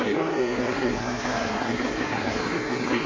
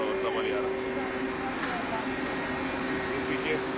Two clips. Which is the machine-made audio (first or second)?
first